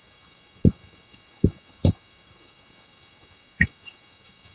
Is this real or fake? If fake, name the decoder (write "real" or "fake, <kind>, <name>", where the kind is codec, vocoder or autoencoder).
fake, autoencoder, DAC-VAE